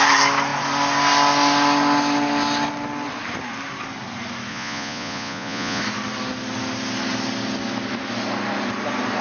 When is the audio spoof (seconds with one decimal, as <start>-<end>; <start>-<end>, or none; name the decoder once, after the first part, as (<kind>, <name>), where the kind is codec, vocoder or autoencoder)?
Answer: 4.5-5.8 (vocoder, Vocos)